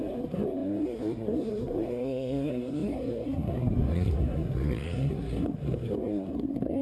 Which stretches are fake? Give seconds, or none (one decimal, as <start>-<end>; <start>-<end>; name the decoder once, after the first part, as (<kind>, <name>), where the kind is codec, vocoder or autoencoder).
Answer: 0.0-6.8 (codec, SNAC)